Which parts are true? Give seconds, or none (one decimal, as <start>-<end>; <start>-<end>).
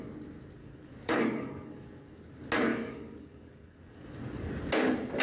0.0-0.6; 2.2-2.7; 4.5-5.2